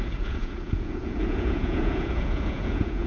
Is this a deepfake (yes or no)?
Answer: yes